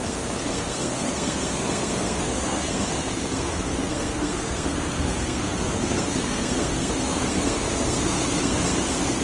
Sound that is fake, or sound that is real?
fake